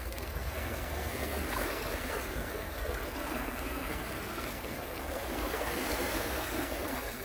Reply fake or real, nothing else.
fake